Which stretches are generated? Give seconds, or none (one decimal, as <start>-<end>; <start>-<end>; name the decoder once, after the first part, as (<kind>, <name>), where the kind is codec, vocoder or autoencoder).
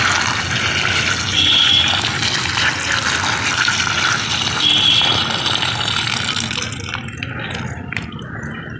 1.3-1.8 (vocoder, Vocos)